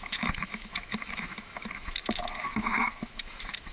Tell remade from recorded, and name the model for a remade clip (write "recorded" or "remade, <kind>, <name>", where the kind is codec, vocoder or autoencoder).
remade, autoencoder, DAC-VAE